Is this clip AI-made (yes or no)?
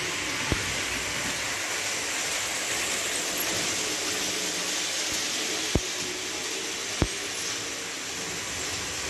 no